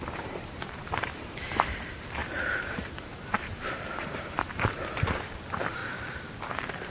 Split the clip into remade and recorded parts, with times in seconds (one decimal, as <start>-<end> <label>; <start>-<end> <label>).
0.0-5.8 remade; 5.8-6.9 recorded